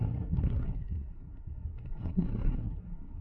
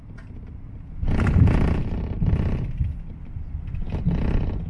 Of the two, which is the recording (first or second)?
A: second